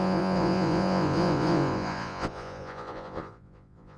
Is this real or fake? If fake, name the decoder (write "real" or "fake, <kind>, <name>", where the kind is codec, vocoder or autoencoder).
fake, vocoder, Vocos